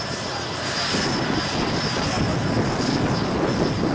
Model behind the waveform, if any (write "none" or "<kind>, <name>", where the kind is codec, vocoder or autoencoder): none